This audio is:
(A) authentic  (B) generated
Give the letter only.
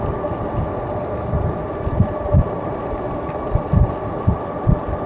A